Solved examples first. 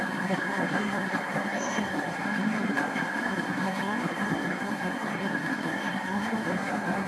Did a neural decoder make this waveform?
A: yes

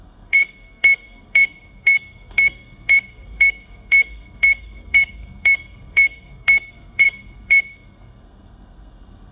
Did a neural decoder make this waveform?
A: yes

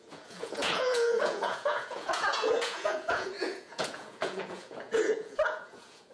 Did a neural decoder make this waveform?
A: yes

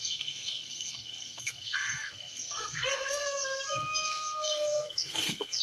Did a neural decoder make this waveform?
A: yes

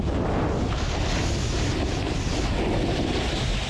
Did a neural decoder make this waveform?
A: no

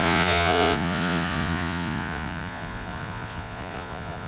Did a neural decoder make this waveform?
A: yes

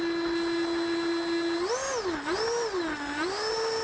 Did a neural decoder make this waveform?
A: no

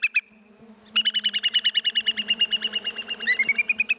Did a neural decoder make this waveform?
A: no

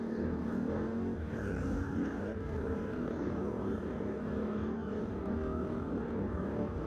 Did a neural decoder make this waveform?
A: yes